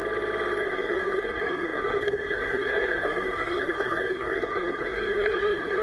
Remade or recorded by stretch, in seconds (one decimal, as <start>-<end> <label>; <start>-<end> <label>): 0.0-0.6 recorded; 0.6-5.8 remade